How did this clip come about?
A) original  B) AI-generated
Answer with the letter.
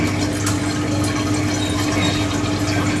A